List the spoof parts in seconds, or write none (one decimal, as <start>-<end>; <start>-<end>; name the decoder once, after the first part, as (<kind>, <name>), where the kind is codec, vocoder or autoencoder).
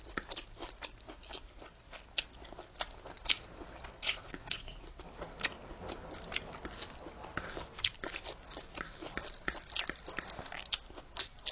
4.0-5.0 (vocoder, WaveNeXt)